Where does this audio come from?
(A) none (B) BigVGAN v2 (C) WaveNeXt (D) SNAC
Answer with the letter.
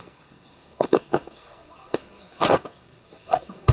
D